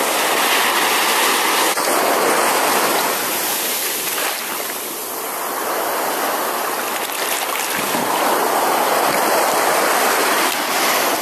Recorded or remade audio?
recorded